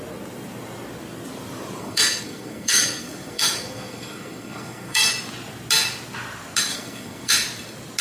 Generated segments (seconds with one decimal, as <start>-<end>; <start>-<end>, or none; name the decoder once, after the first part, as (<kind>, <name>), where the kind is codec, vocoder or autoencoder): 1.8-5.1 (codec, SNAC); 6.7-7.3